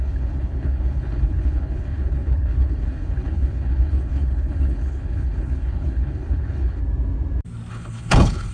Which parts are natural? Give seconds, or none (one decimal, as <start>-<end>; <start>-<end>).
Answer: 6.8-7.7

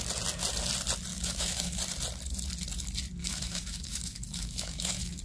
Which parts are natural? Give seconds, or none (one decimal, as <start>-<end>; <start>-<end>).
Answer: 0.0-1.1; 1.8-3.2

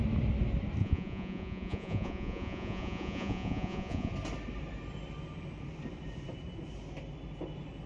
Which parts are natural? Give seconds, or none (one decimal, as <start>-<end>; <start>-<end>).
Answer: 0.0-0.8; 4.1-7.9

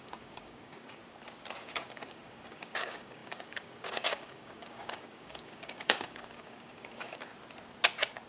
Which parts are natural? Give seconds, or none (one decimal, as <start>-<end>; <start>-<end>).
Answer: 1.0-1.6; 7.3-8.3

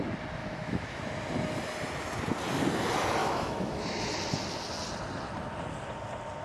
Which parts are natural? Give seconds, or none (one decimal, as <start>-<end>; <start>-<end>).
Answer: 0.0-0.4; 1.0-3.2; 4.0-6.4

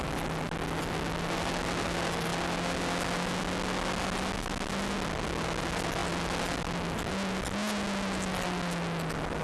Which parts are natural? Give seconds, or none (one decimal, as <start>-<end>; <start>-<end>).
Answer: 0.0-9.4

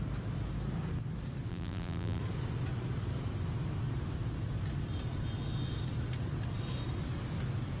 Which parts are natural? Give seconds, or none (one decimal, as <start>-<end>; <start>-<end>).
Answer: 0.0-1.5; 2.2-7.8

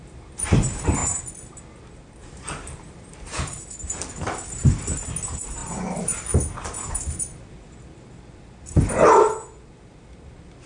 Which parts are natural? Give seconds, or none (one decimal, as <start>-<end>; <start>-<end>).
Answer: 0.0-2.2; 3.6-5.6; 6.4-10.7